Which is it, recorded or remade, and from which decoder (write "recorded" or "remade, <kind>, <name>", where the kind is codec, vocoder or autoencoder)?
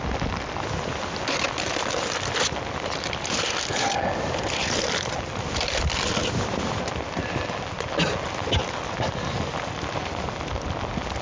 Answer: recorded